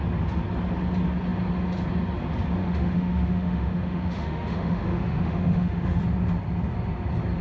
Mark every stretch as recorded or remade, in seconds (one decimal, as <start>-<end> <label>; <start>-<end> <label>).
0.0-2.6 recorded; 2.6-6.0 remade; 6.0-7.4 recorded